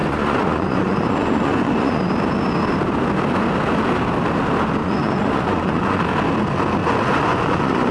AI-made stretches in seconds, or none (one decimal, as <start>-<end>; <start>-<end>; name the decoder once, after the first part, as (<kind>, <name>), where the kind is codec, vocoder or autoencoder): 0.0-2.0 (vocoder, Vocos); 4.8-6.0; 6.8-7.9